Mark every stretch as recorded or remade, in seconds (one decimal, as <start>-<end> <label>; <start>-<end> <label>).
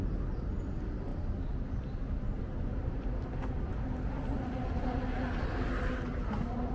0.0-6.7 recorded